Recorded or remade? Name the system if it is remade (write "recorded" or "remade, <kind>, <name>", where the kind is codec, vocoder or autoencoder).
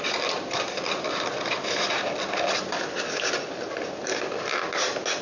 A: recorded